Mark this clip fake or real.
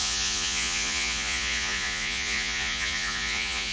fake